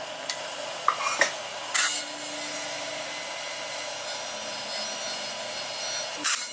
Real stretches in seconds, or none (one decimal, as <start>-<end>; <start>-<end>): 0.0-1.5; 2.0-6.5